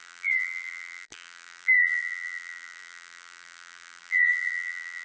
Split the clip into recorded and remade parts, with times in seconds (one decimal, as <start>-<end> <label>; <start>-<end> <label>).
0.0-5.0 remade